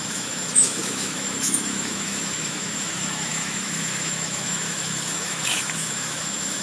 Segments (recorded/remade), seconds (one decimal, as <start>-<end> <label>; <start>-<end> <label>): 0.0-6.6 remade